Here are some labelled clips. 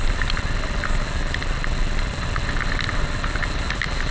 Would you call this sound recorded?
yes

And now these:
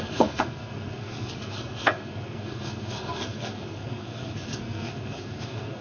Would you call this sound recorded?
no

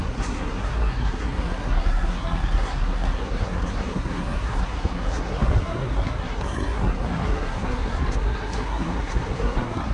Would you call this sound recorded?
no